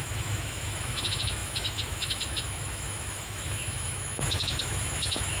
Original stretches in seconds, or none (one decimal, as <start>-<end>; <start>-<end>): none